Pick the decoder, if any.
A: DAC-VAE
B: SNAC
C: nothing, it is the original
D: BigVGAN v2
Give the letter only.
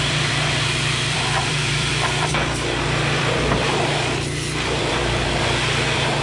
D